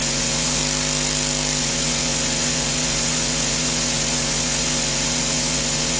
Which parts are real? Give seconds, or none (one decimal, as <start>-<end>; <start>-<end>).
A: 0.6-1.6

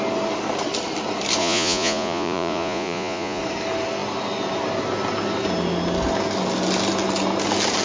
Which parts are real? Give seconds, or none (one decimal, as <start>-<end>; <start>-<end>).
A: 0.0-1.4; 3.4-7.8

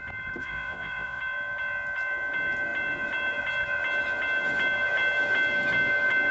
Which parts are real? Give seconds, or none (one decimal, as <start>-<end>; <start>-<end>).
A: 0.0-0.4; 1.2-6.3

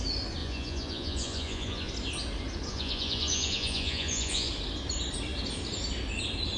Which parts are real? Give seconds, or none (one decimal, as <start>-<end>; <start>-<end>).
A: 0.0-0.4; 1.9-2.7; 4.5-6.6

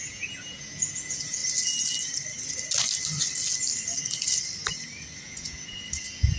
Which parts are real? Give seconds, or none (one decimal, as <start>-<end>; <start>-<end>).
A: 1.4-5.2